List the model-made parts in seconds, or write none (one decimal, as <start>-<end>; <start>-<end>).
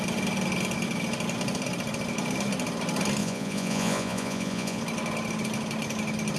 3.2-4.8